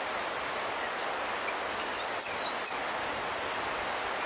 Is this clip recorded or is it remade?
recorded